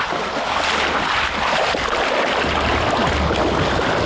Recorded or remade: recorded